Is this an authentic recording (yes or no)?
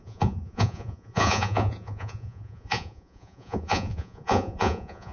no